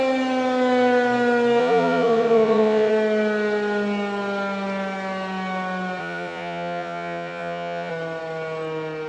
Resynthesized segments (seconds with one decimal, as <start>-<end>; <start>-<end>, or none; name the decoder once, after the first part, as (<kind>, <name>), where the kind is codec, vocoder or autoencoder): 1.6-2.9 (vocoder, Vocos); 6.0-7.9